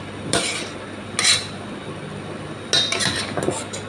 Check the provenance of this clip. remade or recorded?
recorded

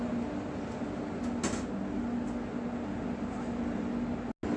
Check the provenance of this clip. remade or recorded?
recorded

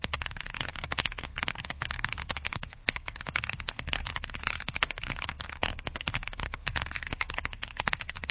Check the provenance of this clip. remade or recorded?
remade